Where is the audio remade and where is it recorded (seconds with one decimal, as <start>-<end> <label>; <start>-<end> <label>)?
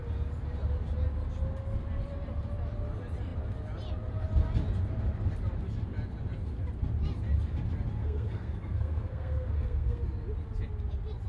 0.0-8.0 recorded; 8.0-10.0 remade; 10.0-11.3 recorded